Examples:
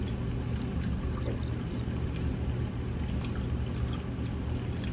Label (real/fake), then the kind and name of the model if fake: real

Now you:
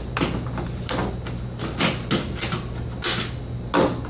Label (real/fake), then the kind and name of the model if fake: real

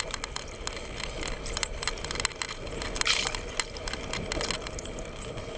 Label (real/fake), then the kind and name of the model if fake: real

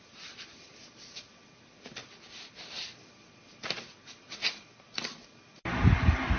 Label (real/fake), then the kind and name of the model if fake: real